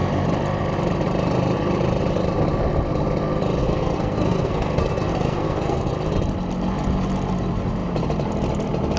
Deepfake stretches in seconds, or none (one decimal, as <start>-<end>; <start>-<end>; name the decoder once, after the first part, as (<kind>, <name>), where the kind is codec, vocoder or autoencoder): 3.6-5.9 (codec, SNAC)